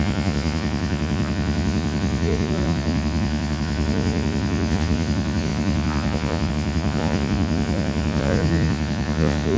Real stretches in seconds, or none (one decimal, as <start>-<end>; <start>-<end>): none

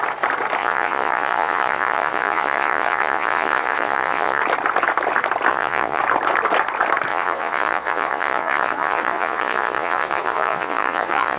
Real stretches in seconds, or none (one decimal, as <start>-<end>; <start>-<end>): 0.0-0.6; 4.4-5.5; 6.0-7.1

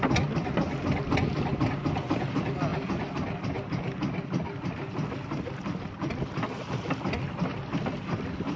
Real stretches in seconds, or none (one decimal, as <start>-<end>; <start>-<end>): 0.0-8.6

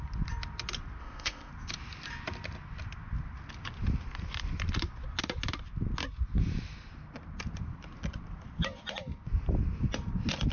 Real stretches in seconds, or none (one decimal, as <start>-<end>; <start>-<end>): 0.0-1.0; 1.5-10.5

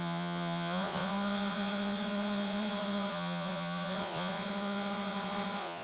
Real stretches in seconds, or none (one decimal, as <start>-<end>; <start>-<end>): none